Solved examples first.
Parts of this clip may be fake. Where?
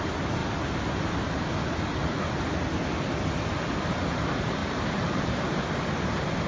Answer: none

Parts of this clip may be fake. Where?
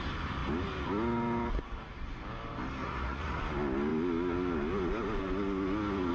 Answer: 2.8-3.4 (vocoder, Vocos)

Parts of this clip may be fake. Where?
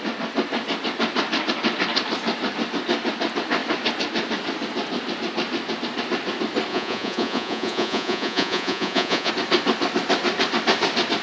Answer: 6.7-9.3 (vocoder, Vocos)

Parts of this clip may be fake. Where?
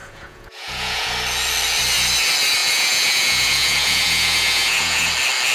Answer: 0.0-1.1 (vocoder, Vocos); 2.6-5.1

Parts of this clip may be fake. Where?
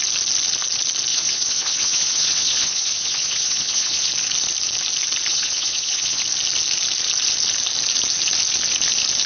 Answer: 1.1-4.1 (vocoder, Vocos); 5.3-6.2